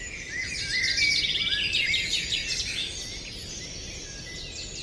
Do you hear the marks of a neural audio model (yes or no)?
no